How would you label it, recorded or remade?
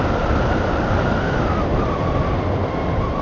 recorded